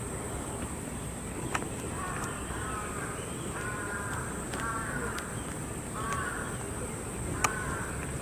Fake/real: real